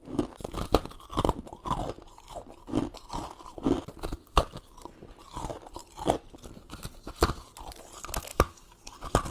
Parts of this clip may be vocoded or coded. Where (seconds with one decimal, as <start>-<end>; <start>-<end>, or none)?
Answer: 8.3-8.8